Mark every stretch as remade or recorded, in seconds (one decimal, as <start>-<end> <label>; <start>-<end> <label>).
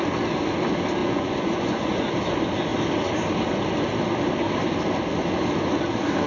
0.0-1.0 recorded; 1.0-2.1 remade; 2.1-6.3 recorded